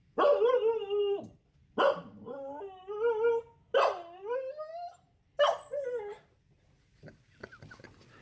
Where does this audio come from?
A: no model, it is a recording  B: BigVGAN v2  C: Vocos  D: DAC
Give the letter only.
A